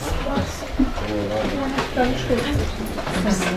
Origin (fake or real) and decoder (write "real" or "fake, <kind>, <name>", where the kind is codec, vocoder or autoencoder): real